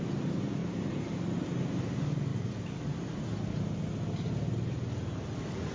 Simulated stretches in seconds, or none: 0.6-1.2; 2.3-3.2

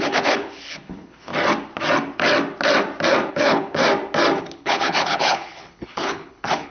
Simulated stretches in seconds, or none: 0.0-1.3; 3.3-3.8; 4.4-6.7

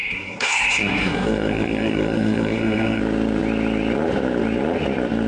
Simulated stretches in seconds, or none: 0.0-3.0

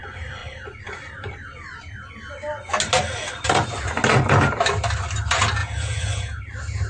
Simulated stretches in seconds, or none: 5.6-6.4

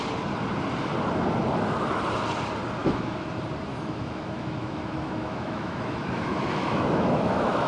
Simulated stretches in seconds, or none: 2.8-3.3; 3.7-7.7

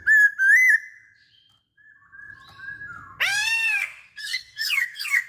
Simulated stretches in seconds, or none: 3.3-5.3